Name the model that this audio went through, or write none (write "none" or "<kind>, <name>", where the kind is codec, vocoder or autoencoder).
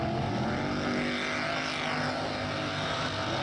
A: none